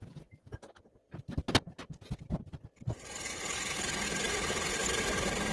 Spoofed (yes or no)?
no